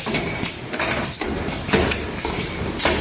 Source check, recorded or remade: remade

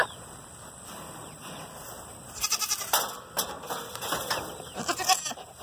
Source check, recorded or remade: remade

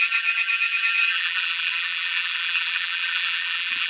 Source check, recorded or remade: remade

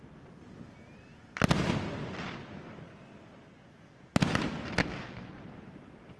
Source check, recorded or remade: recorded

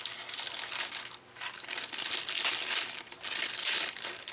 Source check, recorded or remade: recorded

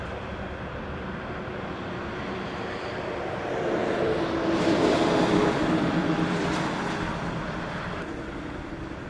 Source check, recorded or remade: remade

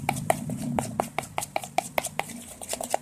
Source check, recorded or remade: remade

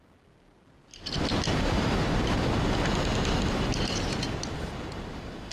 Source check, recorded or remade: recorded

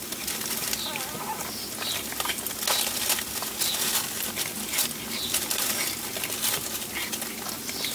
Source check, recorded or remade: recorded